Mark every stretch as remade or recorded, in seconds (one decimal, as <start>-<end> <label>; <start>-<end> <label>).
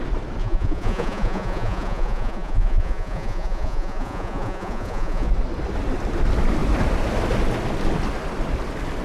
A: 0.0-0.4 recorded; 0.4-5.3 remade; 5.3-9.0 recorded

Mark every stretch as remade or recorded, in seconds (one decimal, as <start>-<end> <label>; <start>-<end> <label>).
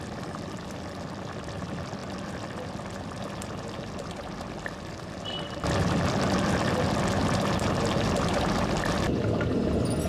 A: 0.0-10.1 recorded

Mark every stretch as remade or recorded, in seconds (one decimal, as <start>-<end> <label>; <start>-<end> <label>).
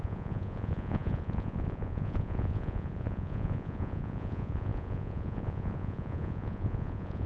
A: 0.0-7.3 remade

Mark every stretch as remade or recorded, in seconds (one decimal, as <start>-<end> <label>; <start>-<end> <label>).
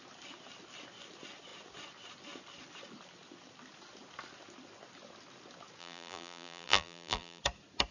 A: 0.0-5.8 recorded; 5.8-7.4 remade; 7.4-7.9 recorded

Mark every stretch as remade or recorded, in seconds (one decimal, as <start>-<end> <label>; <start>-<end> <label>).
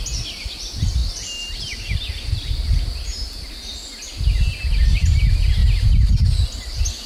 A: 0.0-7.1 recorded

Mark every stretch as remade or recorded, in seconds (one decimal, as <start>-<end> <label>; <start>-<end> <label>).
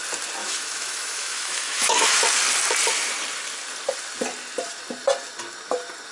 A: 0.0-0.4 recorded; 0.4-2.2 remade; 2.2-6.1 recorded